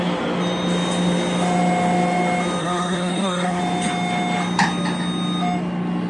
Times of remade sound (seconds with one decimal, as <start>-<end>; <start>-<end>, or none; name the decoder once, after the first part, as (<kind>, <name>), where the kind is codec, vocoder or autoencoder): 2.6-3.6 (codec, SNAC)